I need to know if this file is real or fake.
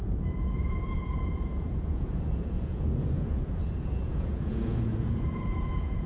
fake